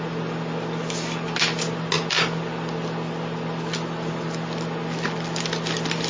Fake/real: real